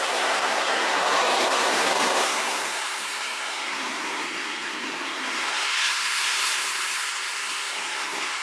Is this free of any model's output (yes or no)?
no